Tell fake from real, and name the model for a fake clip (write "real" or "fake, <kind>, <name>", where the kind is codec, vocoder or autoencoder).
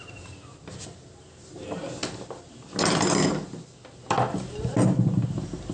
real